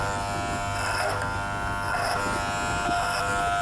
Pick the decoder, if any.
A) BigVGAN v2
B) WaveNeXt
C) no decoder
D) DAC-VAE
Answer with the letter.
C